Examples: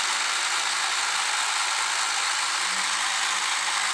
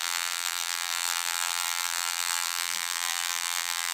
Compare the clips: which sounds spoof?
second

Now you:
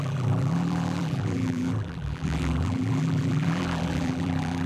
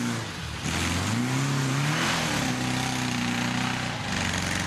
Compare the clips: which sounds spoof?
first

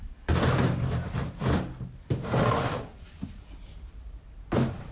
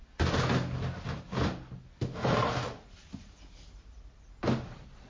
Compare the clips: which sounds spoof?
first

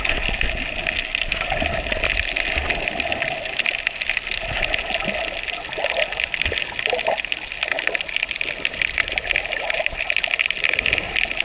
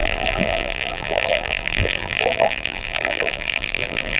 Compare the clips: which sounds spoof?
second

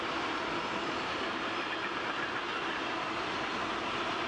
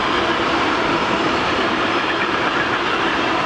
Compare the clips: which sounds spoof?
second